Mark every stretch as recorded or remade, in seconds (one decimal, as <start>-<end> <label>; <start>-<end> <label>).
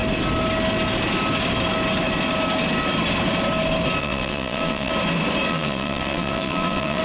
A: 0.0-4.0 recorded; 4.0-4.9 remade; 4.9-5.5 recorded; 5.5-7.0 remade